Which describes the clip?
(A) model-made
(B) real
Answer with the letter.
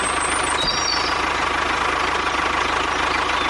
B